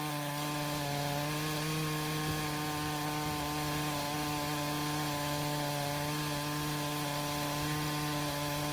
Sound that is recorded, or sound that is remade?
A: recorded